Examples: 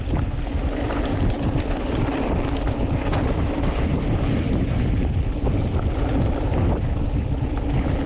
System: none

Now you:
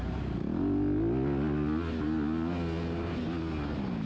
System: none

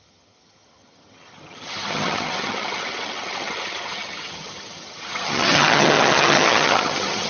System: vocoder, HiFi-GAN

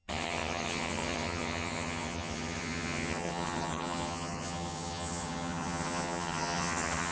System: vocoder, HiFi-GAN